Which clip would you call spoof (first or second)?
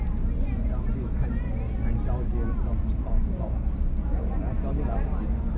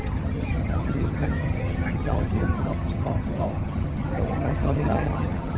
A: second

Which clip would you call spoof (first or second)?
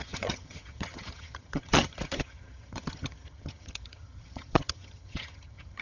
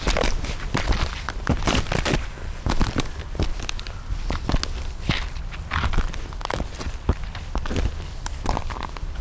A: first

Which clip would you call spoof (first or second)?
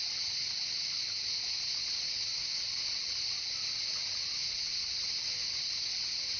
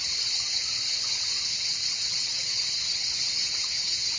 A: second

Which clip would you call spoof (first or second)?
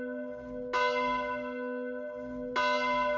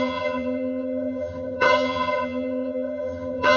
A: second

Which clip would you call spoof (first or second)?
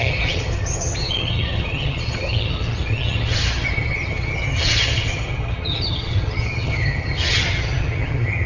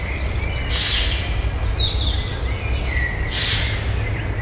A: first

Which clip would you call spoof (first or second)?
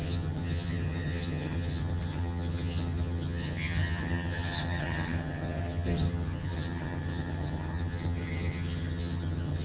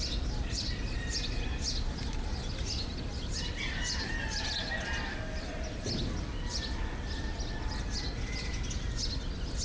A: first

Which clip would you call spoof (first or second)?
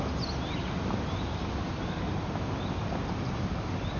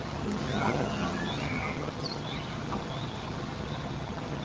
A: second